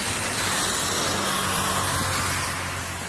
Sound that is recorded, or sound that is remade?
recorded